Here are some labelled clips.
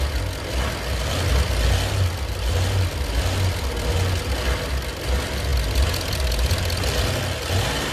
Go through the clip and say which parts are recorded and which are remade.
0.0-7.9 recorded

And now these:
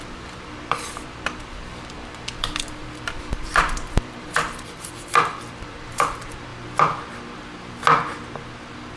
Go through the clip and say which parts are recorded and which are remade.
0.0-6.5 remade; 6.5-9.0 recorded